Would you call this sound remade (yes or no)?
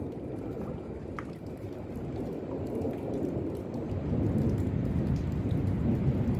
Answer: no